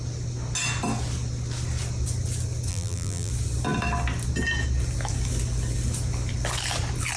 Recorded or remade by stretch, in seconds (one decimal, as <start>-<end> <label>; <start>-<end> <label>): 0.0-2.7 recorded; 2.7-3.3 remade; 3.3-7.2 recorded